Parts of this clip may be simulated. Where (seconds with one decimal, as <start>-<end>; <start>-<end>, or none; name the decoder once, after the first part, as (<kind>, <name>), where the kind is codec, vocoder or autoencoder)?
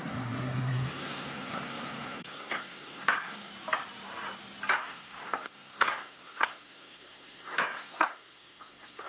0.0-3.5 (codec, SNAC); 4.8-9.1